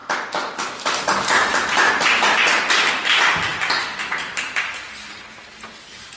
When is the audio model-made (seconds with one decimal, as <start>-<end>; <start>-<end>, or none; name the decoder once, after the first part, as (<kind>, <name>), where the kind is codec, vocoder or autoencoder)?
0.0-2.2 (vocoder, BigVGAN v2)